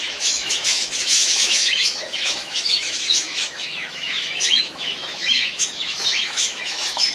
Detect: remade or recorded remade